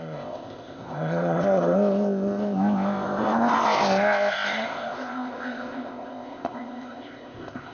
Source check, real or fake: fake